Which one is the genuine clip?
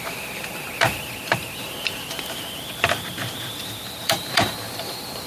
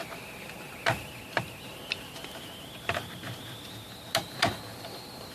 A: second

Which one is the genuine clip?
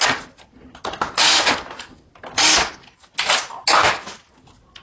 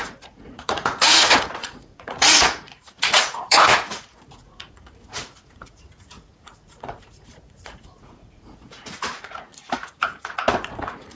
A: first